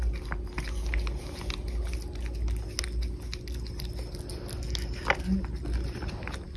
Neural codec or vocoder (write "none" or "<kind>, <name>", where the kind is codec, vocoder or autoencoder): none